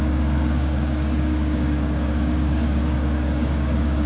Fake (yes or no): yes